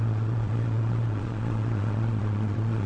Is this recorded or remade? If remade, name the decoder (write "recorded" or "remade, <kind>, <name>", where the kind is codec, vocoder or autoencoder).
remade, vocoder, Vocos